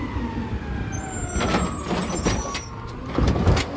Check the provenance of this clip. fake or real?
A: real